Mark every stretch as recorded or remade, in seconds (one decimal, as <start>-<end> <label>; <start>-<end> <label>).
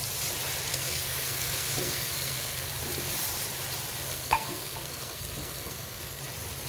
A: 0.0-0.7 recorded; 0.7-2.7 remade; 2.7-4.1 recorded; 4.1-6.2 remade; 6.2-6.7 recorded